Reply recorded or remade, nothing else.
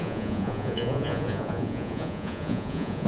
remade